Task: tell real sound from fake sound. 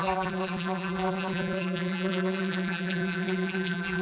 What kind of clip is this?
fake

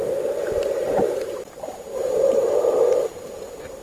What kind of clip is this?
real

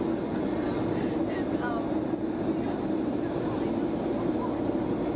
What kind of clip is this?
real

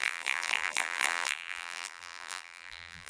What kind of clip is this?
fake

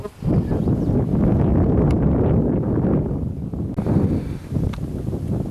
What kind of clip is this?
real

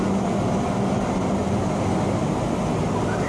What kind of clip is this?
real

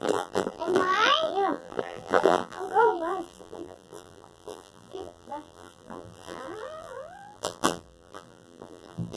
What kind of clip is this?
fake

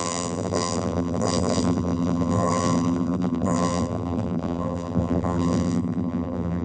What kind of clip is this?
fake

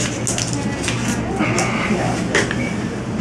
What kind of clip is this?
real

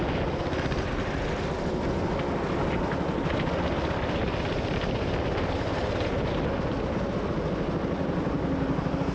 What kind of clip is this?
real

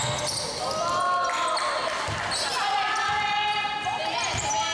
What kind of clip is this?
real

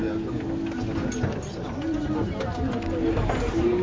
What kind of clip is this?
real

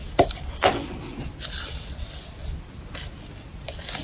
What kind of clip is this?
real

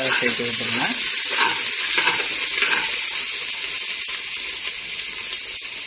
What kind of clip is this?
real